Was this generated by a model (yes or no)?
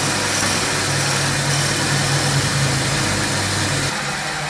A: no